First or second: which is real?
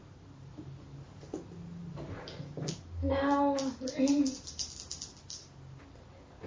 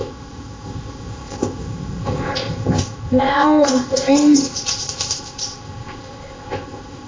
first